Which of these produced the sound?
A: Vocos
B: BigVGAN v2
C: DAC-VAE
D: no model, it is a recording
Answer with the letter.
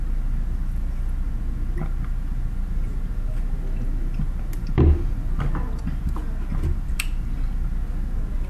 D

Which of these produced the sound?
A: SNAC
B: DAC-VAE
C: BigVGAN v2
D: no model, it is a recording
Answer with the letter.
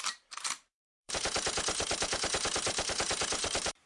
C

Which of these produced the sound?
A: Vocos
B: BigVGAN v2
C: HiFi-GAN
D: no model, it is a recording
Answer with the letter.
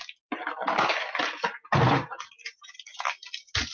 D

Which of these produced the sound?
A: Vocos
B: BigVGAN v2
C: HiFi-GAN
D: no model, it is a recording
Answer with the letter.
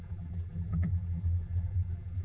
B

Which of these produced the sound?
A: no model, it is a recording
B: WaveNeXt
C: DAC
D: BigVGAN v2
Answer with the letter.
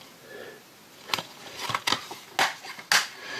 A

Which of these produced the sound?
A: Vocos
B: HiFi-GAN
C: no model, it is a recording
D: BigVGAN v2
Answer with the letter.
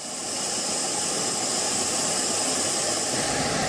C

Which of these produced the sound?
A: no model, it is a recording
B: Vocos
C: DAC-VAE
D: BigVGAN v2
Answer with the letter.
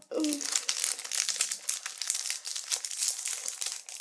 A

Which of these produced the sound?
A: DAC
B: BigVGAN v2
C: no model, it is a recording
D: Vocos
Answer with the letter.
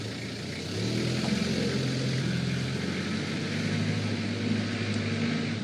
C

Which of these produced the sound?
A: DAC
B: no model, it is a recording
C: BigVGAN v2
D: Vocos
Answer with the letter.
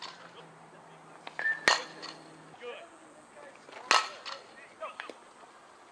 B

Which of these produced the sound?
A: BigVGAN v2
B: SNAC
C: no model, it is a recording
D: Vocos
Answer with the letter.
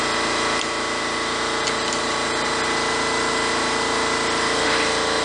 C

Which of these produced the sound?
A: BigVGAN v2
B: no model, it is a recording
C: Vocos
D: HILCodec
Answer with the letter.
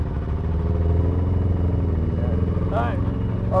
B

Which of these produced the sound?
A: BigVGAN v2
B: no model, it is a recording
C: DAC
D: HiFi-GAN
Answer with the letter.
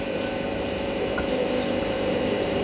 A